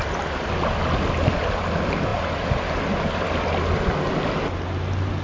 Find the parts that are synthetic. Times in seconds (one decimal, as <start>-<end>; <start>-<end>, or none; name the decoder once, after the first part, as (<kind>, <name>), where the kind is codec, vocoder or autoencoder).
none